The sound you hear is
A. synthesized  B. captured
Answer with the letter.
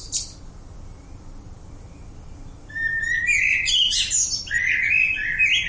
B